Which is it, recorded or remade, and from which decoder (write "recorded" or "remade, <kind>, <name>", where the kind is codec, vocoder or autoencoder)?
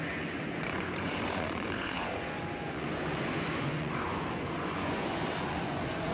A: remade, vocoder, Vocos